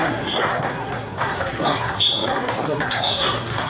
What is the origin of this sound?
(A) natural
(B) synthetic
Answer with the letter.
B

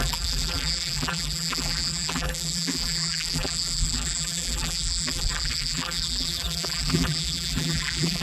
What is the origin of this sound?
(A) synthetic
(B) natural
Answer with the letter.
A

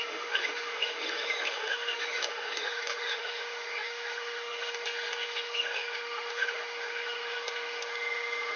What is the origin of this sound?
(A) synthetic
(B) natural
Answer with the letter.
A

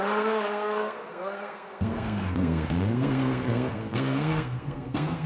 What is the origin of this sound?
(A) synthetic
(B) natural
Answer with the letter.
A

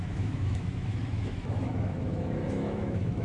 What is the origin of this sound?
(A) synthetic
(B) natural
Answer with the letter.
A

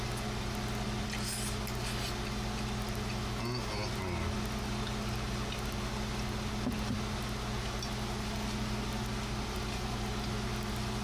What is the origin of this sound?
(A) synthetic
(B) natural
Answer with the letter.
B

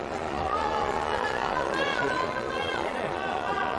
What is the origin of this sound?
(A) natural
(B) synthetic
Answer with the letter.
B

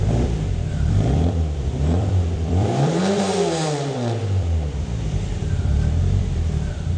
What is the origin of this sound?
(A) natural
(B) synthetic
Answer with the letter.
B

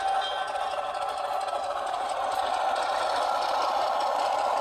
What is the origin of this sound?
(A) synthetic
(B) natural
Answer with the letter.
B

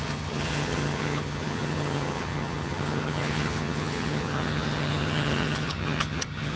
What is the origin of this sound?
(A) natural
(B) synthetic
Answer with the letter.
B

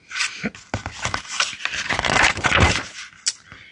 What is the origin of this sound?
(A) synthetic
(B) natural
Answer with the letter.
B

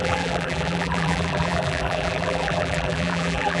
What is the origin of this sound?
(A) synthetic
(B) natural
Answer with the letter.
A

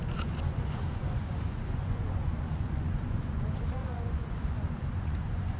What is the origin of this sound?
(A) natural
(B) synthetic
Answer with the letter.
B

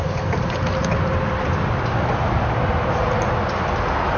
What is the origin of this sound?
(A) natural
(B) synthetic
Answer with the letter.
A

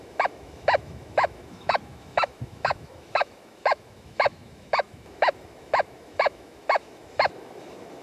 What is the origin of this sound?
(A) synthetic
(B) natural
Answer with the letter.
A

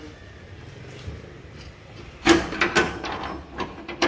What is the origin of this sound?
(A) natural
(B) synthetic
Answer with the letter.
A